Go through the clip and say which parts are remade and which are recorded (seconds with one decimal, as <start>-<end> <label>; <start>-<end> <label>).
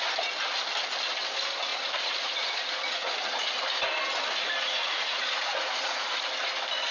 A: 0.0-1.7 recorded; 1.7-3.5 remade; 3.5-4.8 recorded; 4.8-6.3 remade; 6.3-6.9 recorded